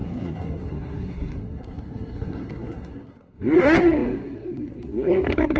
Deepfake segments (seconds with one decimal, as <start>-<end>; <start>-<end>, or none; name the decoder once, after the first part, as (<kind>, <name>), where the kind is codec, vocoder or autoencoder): 0.0-5.6 (codec, SNAC)

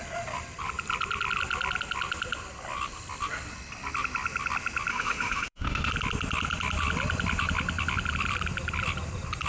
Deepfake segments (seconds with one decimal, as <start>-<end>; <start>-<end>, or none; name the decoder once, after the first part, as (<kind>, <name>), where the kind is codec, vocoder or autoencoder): 4.9-5.9 (autoencoder, DAC-VAE)

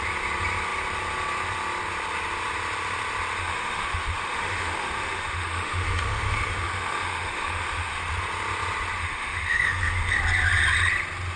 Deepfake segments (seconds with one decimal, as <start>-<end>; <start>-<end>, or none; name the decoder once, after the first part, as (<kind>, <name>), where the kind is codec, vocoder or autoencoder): 3.4-8.0 (autoencoder, DAC-VAE); 9.0-10.1